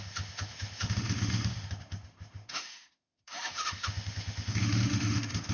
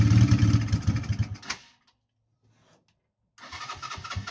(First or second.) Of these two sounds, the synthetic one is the first